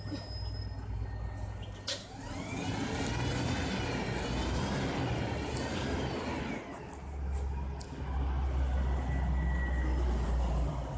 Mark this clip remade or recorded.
recorded